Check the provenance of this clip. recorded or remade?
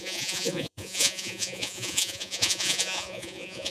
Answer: remade